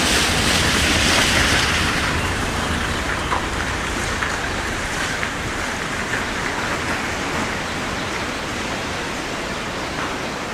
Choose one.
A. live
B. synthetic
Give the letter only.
A